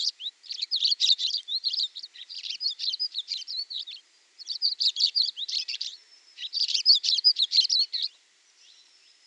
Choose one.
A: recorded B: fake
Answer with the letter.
B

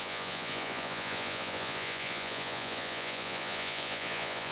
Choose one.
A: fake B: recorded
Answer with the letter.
A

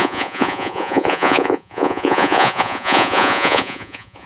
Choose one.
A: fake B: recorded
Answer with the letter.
A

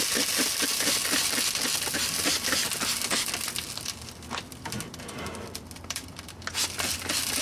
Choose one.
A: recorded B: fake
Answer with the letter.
A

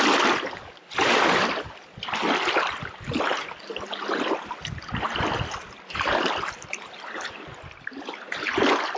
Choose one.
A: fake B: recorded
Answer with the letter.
B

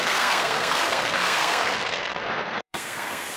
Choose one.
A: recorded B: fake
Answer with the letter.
B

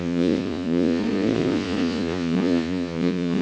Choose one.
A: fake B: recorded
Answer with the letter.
A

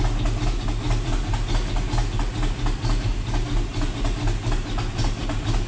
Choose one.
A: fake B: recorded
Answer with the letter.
B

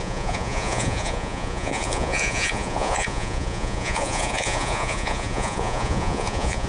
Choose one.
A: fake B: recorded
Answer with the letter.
A